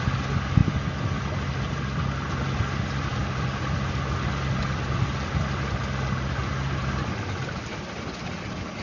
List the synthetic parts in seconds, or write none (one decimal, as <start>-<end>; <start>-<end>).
none